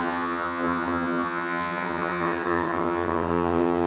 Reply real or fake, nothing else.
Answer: fake